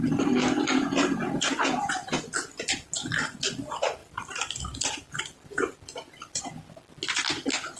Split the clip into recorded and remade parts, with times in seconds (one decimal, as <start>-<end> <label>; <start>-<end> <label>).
0.0-0.8 recorded; 0.8-2.2 remade; 2.2-7.8 recorded